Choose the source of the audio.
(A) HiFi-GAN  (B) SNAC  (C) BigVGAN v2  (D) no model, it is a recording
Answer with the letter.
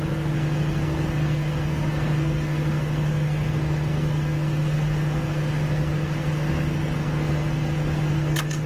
B